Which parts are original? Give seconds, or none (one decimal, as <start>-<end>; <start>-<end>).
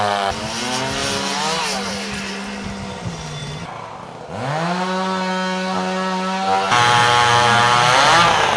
0.0-8.6